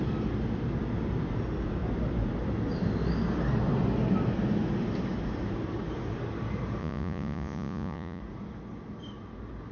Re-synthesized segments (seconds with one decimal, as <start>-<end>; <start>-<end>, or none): 6.8-8.2